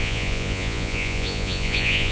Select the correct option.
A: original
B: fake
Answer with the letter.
B